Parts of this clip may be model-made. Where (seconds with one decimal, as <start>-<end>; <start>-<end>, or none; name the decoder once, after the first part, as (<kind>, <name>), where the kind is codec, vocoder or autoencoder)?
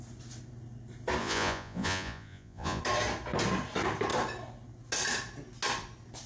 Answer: 1.2-2.8 (vocoder, Vocos)